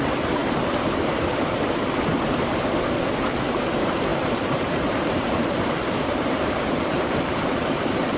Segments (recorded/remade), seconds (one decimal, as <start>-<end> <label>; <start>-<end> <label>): 0.0-4.1 recorded; 4.1-8.2 remade